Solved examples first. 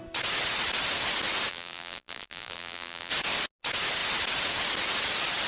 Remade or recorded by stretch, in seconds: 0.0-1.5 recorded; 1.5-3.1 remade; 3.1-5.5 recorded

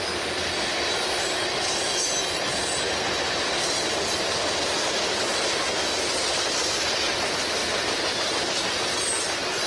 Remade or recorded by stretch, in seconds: 0.0-7.6 recorded; 7.6-8.4 remade; 8.4-9.7 recorded

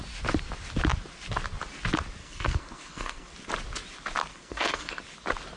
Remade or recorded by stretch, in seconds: 0.0-2.2 recorded; 2.2-3.3 remade; 3.3-4.3 recorded; 4.3-5.0 remade; 5.0-5.6 recorded

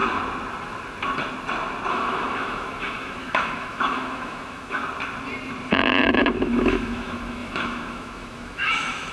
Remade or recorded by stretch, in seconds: 0.0-1.9 recorded; 1.9-4.8 remade; 4.8-5.7 recorded; 5.7-9.1 remade

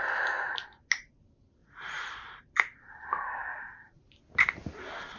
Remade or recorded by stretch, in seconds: 0.0-1.6 recorded; 1.6-2.4 remade; 2.4-3.5 recorded; 3.5-4.1 remade; 4.1-5.2 recorded